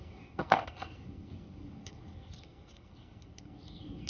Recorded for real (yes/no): no